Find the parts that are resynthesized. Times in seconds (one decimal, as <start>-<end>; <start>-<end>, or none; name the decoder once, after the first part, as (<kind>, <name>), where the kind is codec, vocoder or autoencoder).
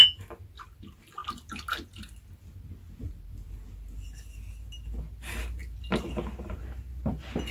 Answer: 5.6-6.6 (vocoder, BigVGAN v2)